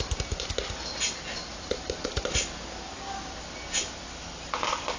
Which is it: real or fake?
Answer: real